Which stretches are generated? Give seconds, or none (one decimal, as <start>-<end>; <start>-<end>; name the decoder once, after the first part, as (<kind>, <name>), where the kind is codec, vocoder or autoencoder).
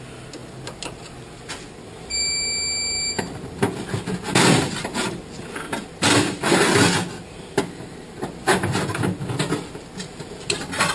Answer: none